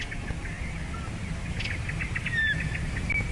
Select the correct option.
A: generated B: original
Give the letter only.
B